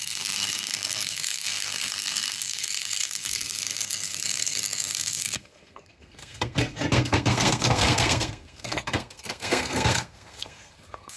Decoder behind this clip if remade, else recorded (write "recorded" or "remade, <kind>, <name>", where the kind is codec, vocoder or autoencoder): remade, codec, SNAC